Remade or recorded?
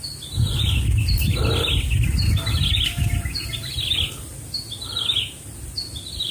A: recorded